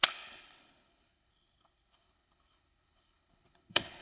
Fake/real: fake